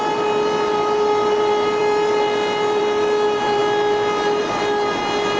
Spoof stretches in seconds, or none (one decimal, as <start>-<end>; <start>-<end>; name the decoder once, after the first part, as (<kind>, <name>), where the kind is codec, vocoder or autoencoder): 0.0-3.6 (vocoder, BigVGAN v2); 4.4-5.4